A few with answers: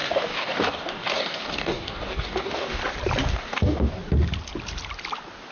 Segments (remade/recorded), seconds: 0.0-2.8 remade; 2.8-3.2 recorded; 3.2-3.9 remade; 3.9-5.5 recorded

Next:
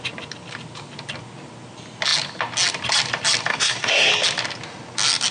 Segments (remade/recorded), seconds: 0.0-3.5 recorded; 3.5-4.1 remade; 4.1-5.3 recorded

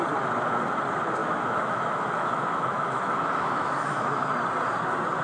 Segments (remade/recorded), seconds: 0.0-1.2 recorded; 1.2-4.3 remade; 4.3-5.2 recorded

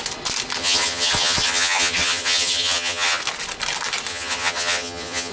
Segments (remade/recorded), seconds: 0.0-0.6 recorded; 0.6-3.2 remade; 3.2-4.1 recorded; 4.1-5.3 remade

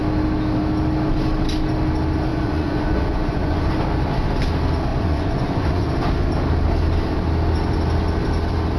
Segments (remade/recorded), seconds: 0.0-2.3 recorded; 2.3-3.7 remade; 3.7-4.9 recorded; 4.9-5.9 remade; 5.9-8.8 recorded

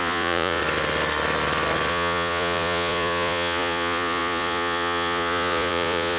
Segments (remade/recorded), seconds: 0.0-0.6 remade; 0.6-1.9 recorded; 1.9-6.2 remade